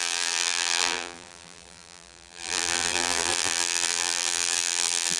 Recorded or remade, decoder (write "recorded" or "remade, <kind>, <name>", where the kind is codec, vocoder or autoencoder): remade, vocoder, BigVGAN v2